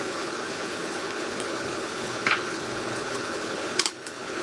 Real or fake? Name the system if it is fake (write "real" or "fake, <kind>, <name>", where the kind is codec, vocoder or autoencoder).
fake, codec, HILCodec